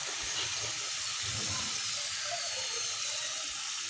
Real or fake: real